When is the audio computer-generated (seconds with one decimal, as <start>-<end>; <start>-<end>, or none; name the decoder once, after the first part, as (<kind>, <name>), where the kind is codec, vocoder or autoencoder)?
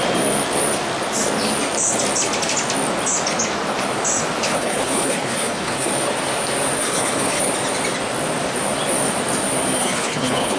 4.5-5.9 (codec, HILCodec); 6.8-7.4; 9.8-10.6